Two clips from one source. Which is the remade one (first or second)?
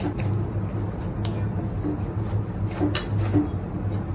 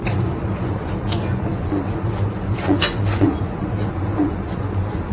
second